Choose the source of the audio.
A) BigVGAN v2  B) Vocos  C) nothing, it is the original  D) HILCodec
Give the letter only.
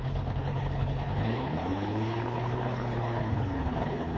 D